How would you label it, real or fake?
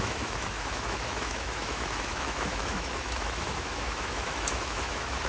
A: fake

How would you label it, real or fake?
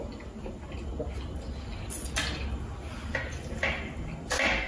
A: real